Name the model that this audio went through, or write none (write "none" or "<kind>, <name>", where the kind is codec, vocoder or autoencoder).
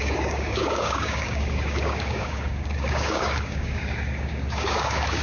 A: codec, DAC